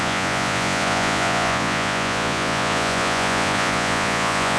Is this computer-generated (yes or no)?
yes